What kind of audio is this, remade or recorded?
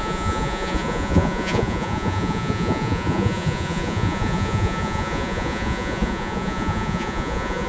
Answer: remade